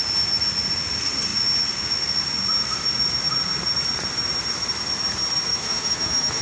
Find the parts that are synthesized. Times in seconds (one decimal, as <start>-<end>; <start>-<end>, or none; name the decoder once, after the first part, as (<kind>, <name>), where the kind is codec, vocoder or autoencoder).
5.5-6.4 (autoencoder, DAC-VAE)